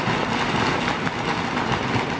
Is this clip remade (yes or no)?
no